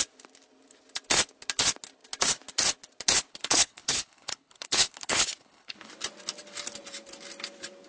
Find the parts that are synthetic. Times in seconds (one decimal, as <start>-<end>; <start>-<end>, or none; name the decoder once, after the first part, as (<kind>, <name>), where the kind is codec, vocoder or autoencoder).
3.3-5.9 (codec, HILCodec)